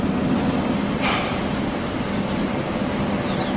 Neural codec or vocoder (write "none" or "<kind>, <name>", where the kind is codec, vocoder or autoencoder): none